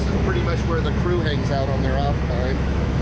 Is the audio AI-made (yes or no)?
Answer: yes